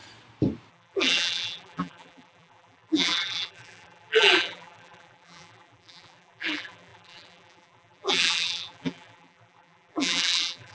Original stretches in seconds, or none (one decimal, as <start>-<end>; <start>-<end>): 0.0-0.7